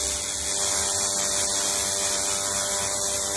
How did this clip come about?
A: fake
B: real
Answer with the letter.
B